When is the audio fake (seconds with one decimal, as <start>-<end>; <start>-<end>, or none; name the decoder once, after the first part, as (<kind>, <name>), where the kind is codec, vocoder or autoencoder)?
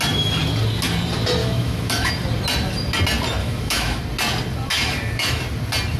1.4-2.1 (autoencoder, DAC-VAE); 3.4-4.0; 4.7-5.4